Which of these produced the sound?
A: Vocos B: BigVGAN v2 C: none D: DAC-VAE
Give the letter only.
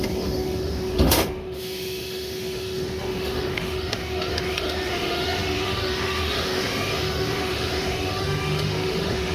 D